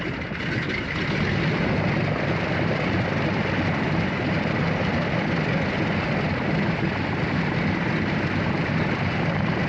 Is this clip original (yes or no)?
yes